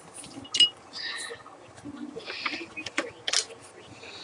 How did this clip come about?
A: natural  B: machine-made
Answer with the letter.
A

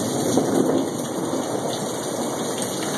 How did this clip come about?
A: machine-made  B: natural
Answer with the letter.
B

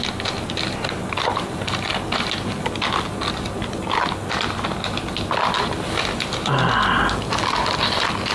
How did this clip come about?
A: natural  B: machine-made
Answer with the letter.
A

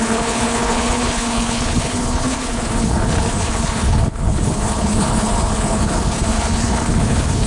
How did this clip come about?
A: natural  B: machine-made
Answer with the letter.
B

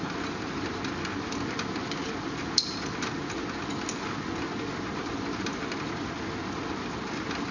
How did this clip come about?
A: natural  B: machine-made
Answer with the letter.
A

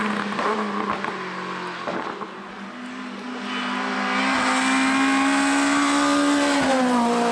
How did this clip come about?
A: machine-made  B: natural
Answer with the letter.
B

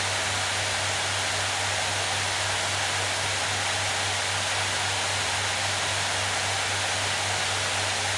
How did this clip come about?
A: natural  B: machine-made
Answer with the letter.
A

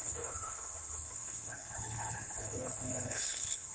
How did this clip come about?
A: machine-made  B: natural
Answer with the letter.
A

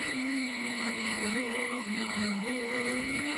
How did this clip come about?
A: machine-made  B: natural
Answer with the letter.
A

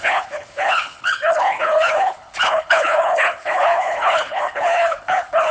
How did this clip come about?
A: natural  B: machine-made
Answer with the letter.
B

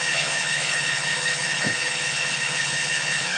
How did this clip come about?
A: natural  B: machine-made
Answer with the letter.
B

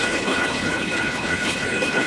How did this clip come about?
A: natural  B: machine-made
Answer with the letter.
B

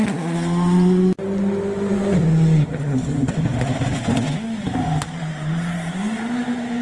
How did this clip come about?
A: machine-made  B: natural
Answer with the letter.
B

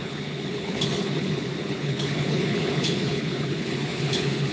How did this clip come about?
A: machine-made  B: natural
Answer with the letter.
A